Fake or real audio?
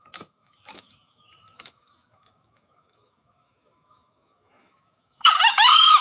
fake